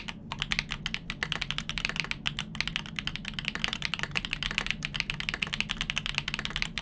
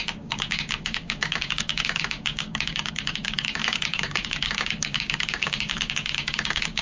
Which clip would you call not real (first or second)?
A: second